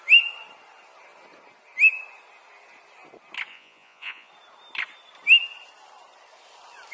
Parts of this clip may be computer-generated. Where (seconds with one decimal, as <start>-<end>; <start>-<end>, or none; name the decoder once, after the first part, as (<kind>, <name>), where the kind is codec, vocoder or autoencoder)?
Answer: 3.5-4.3 (vocoder, Vocos)

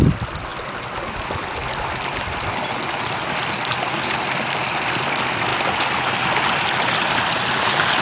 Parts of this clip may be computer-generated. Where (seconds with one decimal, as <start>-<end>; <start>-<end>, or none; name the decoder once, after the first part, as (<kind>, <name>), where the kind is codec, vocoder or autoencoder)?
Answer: none

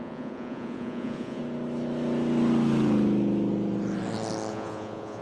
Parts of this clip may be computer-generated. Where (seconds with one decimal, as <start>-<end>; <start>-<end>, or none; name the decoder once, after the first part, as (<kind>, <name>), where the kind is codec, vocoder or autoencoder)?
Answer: 0.0-1.4 (vocoder, Vocos); 4.5-5.2

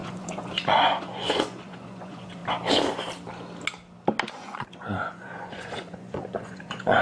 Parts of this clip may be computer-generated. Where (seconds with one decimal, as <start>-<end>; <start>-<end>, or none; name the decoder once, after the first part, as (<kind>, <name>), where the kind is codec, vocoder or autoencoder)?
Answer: 0.0-2.4 (vocoder, Vocos); 4.3-7.0

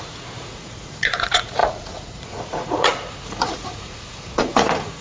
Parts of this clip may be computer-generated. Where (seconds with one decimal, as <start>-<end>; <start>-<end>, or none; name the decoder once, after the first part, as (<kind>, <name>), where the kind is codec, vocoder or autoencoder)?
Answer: 0.0-5.0 (vocoder, Vocos)